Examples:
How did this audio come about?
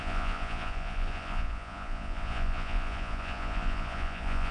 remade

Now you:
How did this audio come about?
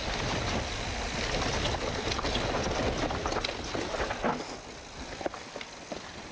recorded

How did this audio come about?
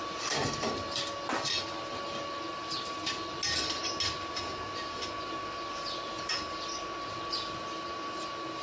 recorded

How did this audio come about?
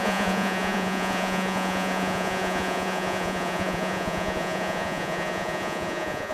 remade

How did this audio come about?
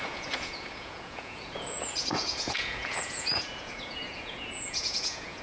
remade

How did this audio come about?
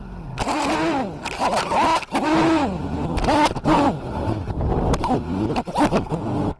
recorded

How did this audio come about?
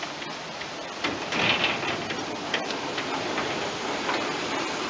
recorded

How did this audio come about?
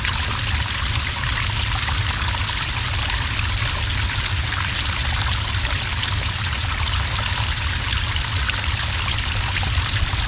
recorded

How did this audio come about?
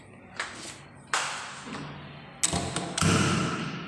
recorded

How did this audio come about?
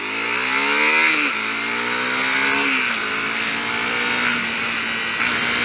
recorded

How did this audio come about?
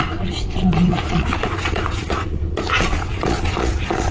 remade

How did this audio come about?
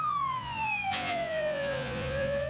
remade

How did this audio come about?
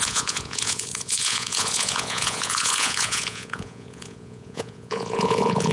remade